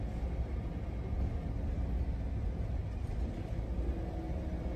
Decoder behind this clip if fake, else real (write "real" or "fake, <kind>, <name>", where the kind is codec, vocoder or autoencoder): real